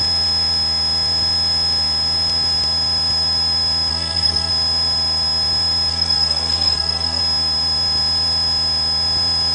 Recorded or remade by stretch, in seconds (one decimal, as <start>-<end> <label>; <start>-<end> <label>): 0.0-3.9 recorded; 3.9-4.5 remade; 4.5-5.9 recorded; 5.9-7.2 remade; 7.2-9.5 recorded